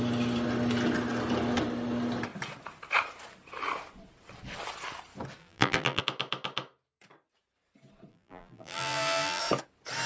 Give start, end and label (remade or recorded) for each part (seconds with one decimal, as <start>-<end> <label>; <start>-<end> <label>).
0.0-5.4 recorded; 5.4-6.0 remade; 6.0-8.1 recorded; 8.1-9.4 remade; 9.4-10.1 recorded